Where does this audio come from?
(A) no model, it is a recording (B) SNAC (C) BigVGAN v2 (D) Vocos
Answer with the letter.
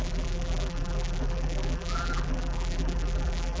C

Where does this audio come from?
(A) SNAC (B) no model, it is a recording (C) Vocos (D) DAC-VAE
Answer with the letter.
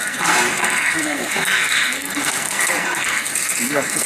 A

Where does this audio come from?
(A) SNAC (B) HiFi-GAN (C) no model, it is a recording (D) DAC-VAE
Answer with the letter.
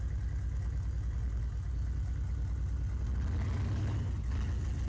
C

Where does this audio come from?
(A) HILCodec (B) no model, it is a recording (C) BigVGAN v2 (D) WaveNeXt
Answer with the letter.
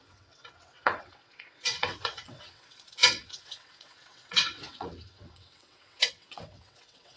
D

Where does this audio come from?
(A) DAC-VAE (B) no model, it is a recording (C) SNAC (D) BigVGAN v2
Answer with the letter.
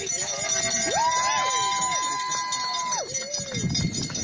B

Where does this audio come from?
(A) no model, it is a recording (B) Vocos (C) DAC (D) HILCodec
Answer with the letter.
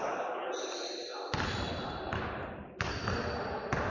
A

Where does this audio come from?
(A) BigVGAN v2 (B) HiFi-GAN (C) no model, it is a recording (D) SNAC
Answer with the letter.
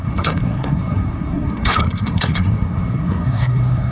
D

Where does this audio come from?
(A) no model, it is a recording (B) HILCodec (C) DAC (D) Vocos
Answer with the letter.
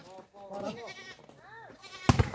A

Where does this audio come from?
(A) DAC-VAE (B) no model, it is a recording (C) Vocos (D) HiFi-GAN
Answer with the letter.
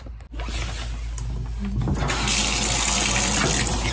B